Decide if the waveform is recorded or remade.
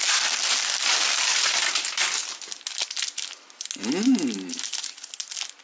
recorded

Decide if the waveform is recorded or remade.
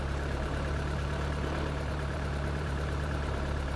remade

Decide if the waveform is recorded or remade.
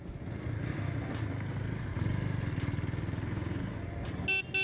recorded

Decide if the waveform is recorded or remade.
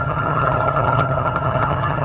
remade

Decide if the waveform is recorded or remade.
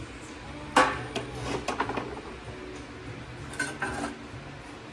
recorded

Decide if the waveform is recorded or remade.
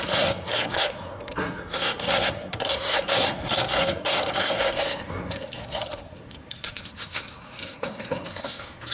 remade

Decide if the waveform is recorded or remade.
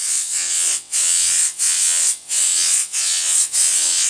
remade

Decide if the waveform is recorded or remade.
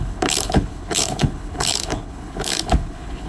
remade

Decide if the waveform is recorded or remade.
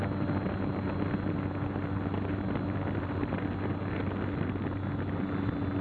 recorded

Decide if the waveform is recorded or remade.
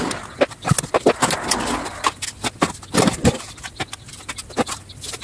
recorded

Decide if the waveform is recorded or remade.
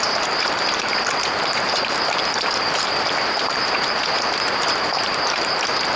remade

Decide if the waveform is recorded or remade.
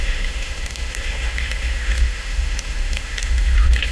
remade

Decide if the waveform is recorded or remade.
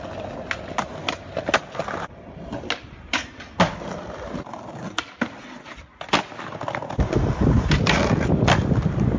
recorded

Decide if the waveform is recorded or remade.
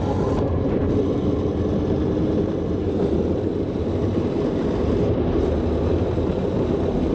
recorded